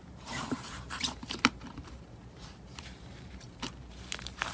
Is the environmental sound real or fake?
fake